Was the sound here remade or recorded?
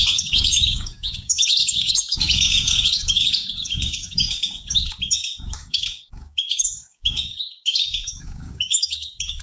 remade